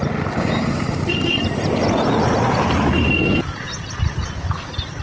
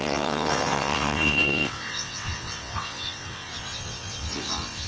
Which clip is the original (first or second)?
first